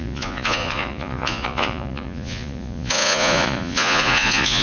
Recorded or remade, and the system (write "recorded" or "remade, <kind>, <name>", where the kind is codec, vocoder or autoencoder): remade, vocoder, Vocos